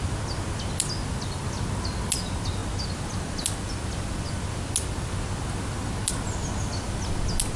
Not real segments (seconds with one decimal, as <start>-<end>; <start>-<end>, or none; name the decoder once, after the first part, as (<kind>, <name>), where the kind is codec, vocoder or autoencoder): none